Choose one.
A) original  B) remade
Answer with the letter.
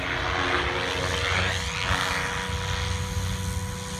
A